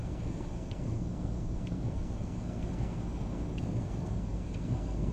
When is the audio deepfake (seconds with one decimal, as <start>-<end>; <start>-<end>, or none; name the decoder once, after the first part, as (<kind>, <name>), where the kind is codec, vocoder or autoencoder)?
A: 0.0-5.1 (codec, SNAC)